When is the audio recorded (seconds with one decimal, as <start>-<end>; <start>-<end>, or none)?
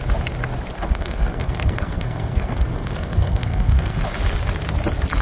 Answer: 0.0-0.9; 4.0-5.2